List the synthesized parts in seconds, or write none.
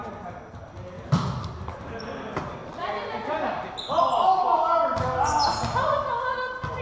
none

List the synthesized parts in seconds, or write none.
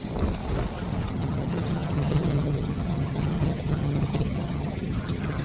1.1-5.4 (vocoder, HiFi-GAN)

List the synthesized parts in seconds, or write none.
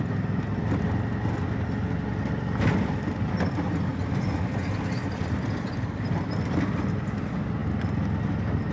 none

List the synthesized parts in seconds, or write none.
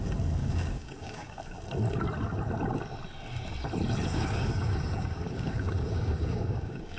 0.4-1.4 (codec, DAC); 4.1-7.0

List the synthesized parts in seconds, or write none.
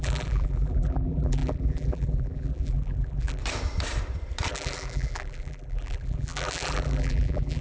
0.0-3.4 (vocoder, BigVGAN v2); 4.5-7.6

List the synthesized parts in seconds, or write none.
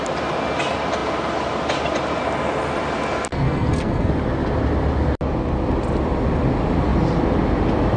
3.3-4.1 (codec, SNAC)